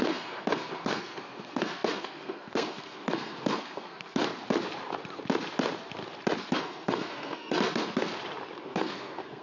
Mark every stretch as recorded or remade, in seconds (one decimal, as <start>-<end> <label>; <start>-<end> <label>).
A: 0.0-4.2 remade; 4.2-6.4 recorded; 6.4-8.1 remade; 8.1-8.6 recorded; 8.6-9.4 remade